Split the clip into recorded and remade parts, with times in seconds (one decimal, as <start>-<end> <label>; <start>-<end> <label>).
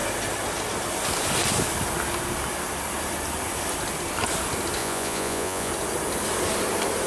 0.0-4.8 recorded; 4.8-5.7 remade; 5.7-7.1 recorded